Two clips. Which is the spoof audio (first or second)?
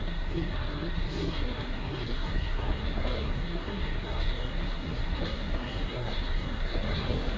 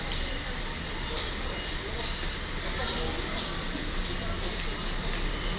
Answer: first